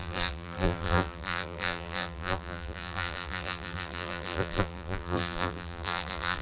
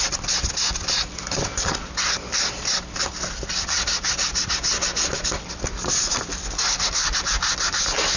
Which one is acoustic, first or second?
second